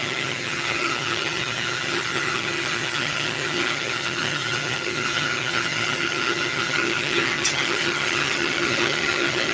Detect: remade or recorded remade